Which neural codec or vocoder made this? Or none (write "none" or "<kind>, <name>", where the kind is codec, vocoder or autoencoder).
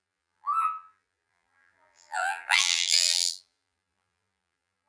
vocoder, BigVGAN v2